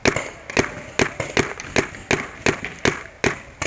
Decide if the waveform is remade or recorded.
recorded